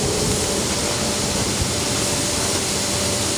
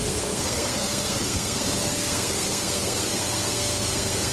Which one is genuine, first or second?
first